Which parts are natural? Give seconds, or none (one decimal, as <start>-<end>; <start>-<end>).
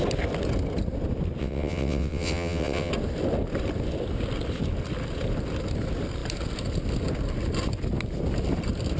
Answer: 0.0-1.4; 2.9-9.0